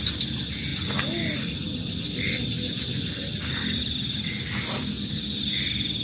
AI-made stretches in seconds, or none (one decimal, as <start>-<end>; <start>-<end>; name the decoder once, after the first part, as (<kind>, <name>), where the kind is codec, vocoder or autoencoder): none